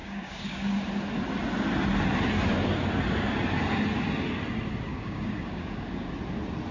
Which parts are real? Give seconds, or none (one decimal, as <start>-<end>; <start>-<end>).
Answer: 0.9-4.9; 6.1-6.7